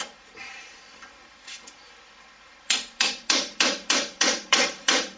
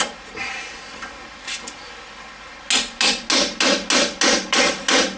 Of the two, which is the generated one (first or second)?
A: first